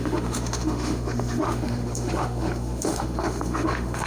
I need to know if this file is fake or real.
fake